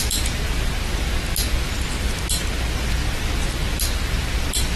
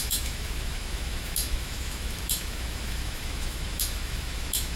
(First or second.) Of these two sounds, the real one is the first